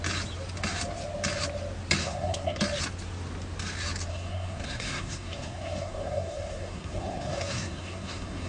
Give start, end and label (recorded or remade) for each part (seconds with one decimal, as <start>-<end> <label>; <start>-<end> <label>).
0.0-2.0 recorded; 2.0-2.6 remade; 2.6-4.1 recorded; 4.1-8.5 remade